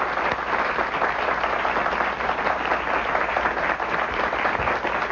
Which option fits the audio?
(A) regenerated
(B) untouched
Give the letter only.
B